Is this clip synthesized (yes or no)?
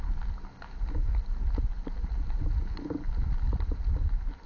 no